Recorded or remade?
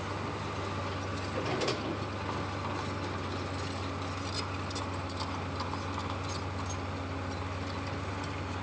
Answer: recorded